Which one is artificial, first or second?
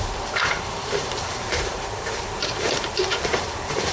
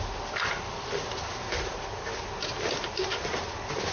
first